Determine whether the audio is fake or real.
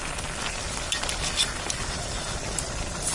real